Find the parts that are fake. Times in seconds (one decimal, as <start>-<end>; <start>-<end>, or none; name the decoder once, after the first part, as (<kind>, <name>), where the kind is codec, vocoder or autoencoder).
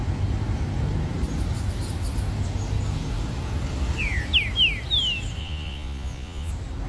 5.4-6.5 (vocoder, Vocos)